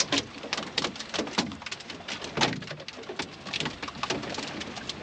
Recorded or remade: recorded